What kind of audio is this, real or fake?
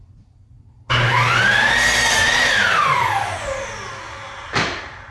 real